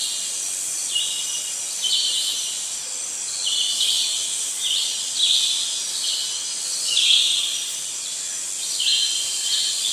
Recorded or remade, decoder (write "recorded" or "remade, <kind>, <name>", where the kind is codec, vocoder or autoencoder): recorded